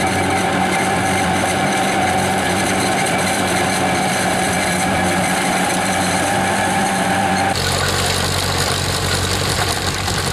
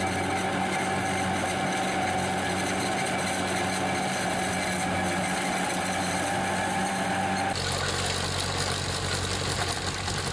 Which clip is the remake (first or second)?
first